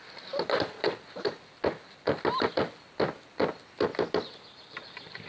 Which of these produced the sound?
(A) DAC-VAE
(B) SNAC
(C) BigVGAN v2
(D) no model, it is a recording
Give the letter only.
C